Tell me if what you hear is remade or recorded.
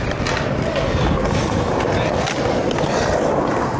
recorded